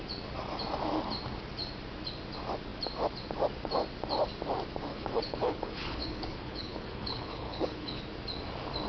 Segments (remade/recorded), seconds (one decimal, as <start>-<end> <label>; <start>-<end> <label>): 0.0-4.9 recorded; 4.9-8.0 remade; 8.0-8.9 recorded